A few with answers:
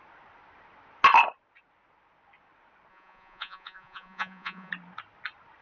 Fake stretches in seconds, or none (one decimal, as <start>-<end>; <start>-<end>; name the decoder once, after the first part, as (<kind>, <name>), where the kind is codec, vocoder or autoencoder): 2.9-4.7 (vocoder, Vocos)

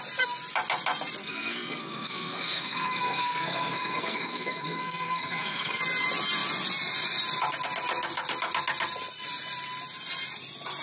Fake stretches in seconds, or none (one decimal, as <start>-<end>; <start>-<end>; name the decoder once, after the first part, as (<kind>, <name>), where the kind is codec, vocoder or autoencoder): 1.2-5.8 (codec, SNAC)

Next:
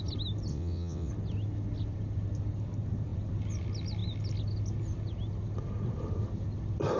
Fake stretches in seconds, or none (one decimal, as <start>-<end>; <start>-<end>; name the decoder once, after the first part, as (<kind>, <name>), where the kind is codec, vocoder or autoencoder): 0.5-1.1 (vocoder, WaveNeXt)

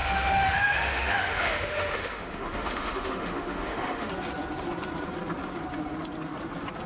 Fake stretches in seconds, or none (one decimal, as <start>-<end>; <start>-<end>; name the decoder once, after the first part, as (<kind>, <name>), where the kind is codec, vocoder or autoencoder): 0.0-4.1 (autoencoder, DAC-VAE)

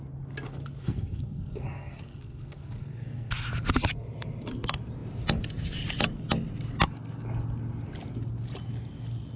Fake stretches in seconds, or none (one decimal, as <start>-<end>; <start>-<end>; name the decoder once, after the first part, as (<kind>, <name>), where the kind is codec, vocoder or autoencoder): 0.5-3.3 (codec, SNAC)

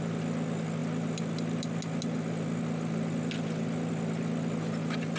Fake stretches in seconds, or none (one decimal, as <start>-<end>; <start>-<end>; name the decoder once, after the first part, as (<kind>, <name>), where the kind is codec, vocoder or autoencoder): none

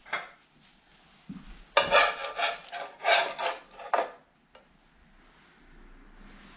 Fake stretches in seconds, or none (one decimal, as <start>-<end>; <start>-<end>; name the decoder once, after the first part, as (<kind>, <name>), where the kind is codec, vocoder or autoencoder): none

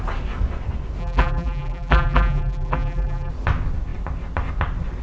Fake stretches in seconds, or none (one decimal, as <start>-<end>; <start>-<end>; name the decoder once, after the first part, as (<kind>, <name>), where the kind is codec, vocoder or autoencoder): 1.0-3.3 (vocoder, BigVGAN v2)